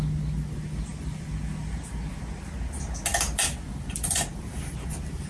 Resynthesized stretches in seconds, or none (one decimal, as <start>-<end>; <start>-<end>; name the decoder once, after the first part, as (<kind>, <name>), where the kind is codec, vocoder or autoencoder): none